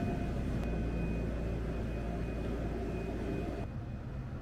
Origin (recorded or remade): recorded